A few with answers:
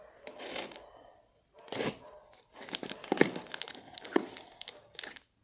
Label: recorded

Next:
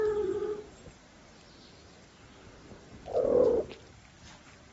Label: recorded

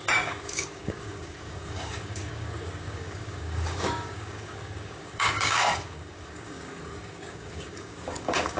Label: remade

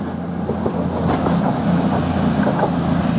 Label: recorded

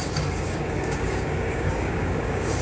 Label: remade